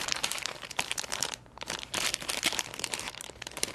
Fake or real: fake